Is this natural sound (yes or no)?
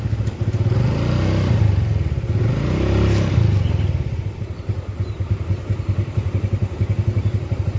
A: yes